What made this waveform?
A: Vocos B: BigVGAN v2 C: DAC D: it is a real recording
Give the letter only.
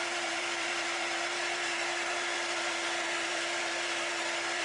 B